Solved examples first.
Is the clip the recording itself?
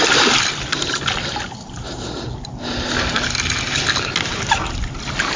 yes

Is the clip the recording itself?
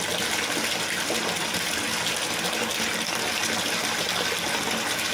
yes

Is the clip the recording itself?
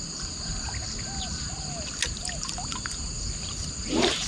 yes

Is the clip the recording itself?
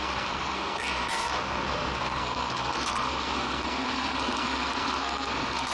no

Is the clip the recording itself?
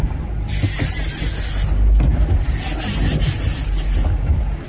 yes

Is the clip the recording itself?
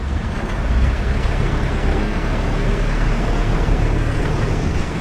no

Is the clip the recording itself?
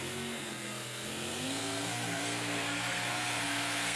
no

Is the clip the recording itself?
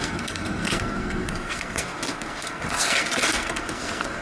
no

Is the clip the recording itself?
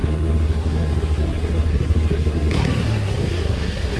no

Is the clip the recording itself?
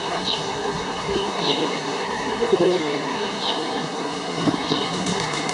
no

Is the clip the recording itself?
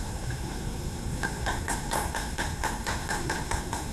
no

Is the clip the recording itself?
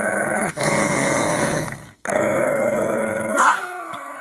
no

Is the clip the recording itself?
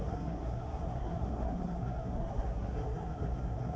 no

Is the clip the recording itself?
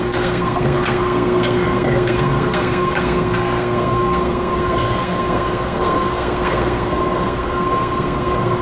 no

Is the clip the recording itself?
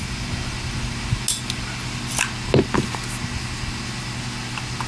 yes